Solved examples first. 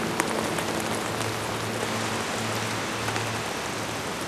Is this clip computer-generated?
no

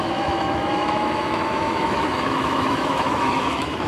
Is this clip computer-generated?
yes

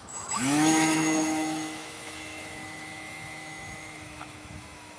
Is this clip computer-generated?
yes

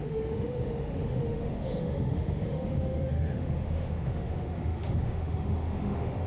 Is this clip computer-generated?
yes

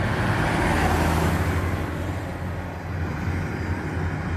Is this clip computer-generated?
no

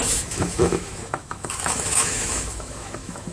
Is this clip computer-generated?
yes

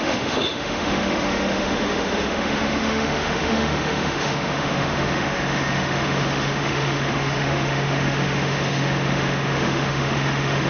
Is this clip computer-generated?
yes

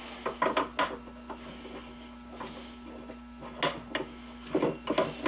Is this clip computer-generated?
no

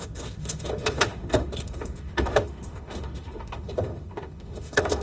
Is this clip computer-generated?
yes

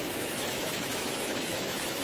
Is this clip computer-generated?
yes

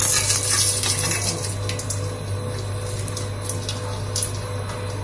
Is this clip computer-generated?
no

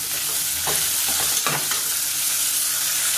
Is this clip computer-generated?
no